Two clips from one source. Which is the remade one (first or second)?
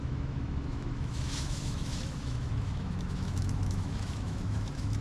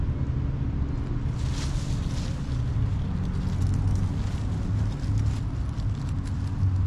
first